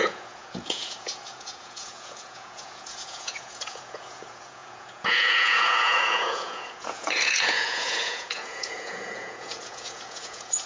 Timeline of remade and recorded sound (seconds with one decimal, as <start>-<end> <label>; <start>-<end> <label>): 0.0-10.7 remade